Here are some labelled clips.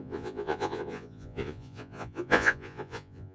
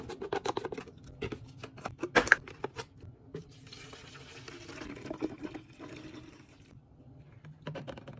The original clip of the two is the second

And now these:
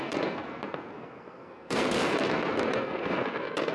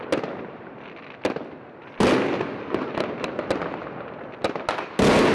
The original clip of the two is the second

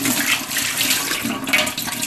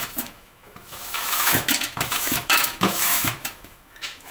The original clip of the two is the first